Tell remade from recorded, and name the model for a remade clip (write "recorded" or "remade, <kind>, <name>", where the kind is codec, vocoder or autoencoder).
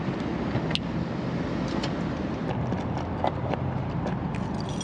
recorded